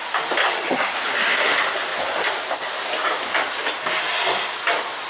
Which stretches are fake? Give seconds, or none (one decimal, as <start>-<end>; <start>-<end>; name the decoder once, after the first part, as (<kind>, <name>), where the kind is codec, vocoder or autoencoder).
0.4-0.9 (vocoder, HiFi-GAN)

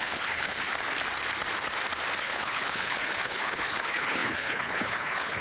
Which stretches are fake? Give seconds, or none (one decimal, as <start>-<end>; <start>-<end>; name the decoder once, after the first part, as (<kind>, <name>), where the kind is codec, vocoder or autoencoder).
0.0-0.7 (codec, HILCodec); 2.2-5.4

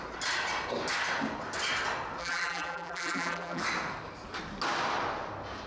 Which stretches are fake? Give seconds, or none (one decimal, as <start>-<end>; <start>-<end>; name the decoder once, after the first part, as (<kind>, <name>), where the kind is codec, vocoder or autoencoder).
2.2-3.6 (vocoder, BigVGAN v2)

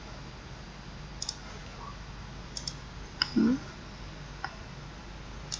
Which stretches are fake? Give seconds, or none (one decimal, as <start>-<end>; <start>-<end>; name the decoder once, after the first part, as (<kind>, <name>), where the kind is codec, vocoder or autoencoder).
none